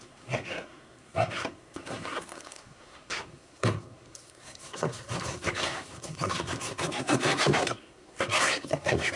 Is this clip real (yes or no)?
no